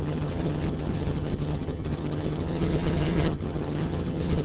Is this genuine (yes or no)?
no